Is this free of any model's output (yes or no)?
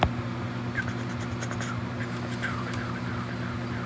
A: yes